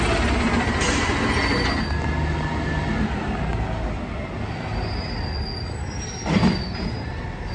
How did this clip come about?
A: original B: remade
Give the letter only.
A